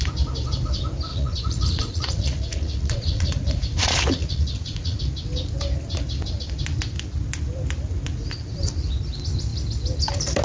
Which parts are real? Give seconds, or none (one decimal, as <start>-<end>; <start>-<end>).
0.0-1.1; 5.0-10.4